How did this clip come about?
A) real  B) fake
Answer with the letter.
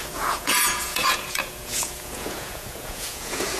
B